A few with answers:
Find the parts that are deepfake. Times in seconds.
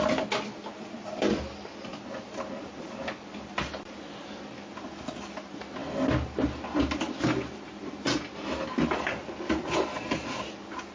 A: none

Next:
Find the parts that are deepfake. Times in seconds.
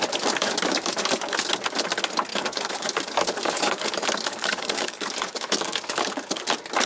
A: 0.4-1.5; 2.3-6.4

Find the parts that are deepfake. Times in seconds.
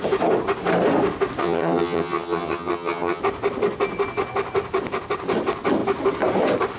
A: 1.4-3.2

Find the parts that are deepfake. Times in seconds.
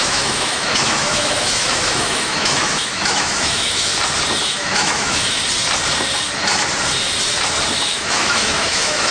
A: 0.0-3.9; 4.4-5.4; 7.7-9.1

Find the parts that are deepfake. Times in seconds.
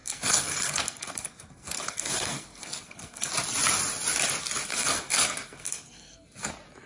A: 0.0-3.3; 4.7-6.5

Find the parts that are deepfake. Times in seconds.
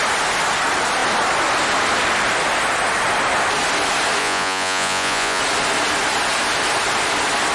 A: 4.2-5.4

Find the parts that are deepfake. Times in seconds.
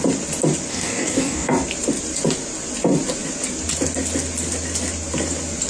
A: 0.7-1.5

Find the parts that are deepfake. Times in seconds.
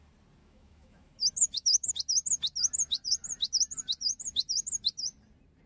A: 0.4-1.9